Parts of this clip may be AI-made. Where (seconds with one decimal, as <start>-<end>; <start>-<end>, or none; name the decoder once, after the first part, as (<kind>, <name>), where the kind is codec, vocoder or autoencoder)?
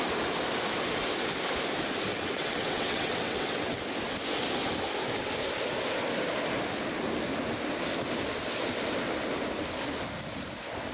2.1-3.8 (vocoder, WaveNeXt)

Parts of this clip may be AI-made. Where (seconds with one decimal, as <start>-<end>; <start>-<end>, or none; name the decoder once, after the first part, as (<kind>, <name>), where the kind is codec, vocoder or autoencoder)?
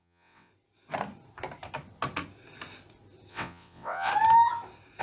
0.0-0.5 (vocoder, WaveNeXt); 3.3-4.1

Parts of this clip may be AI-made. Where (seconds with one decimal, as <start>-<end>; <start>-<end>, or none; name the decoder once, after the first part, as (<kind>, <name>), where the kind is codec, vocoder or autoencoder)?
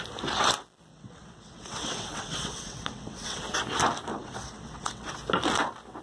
0.9-3.4 (vocoder, WaveNeXt); 4.1-5.1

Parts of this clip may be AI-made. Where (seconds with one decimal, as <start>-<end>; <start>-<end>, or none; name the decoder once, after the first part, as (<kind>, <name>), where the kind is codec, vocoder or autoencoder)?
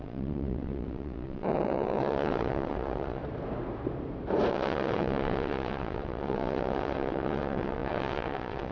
0.0-3.2 (vocoder, WaveNeXt); 4.5-8.7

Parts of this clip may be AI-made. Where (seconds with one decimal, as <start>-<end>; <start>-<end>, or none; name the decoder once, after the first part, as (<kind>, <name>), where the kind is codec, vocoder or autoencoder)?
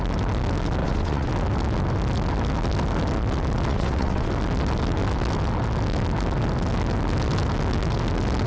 0.8-1.3 (vocoder, WaveNeXt); 3.7-4.3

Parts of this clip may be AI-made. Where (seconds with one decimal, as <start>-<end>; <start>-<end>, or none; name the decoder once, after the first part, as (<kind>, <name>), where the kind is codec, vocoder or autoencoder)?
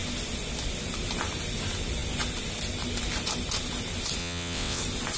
4.2-4.8 (vocoder, WaveNeXt)